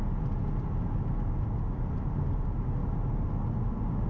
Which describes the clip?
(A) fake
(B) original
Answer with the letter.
B